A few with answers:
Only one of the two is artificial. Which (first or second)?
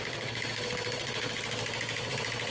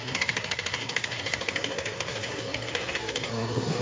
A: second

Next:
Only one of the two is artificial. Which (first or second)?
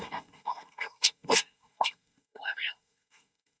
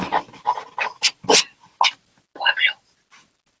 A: first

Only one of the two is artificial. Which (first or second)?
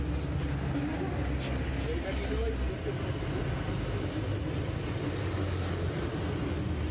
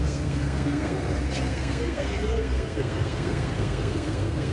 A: second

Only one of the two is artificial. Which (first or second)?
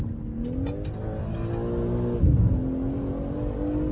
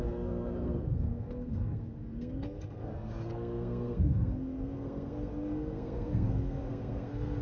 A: second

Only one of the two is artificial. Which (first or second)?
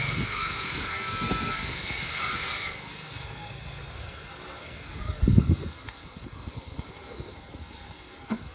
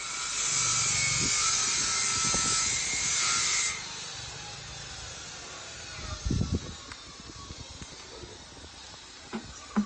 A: first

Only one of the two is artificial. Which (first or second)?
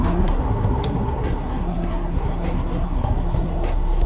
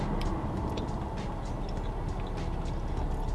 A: first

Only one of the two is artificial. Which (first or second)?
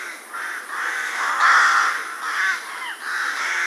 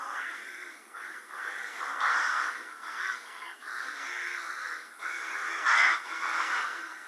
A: second